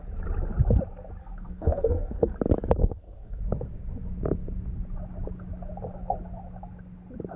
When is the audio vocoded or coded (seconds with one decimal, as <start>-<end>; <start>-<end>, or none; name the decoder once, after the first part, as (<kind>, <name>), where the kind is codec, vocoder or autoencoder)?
1.2-2.3 (codec, SNAC); 2.8-3.4